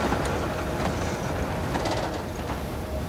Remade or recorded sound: recorded